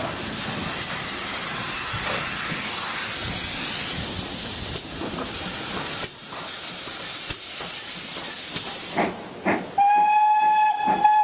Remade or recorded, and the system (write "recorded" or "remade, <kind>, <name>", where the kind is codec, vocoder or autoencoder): recorded